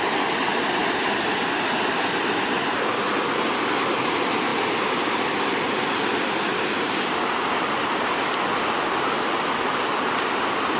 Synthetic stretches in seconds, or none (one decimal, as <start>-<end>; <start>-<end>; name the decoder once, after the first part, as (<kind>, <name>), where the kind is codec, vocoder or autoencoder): none